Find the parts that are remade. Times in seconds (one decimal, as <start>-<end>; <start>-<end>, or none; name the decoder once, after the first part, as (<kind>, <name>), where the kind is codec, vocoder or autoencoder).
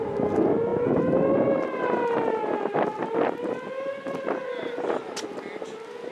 none